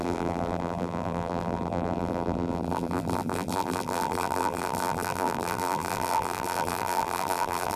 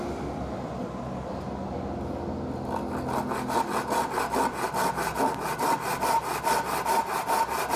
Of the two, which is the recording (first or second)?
second